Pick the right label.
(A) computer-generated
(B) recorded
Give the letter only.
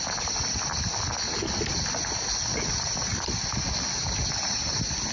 B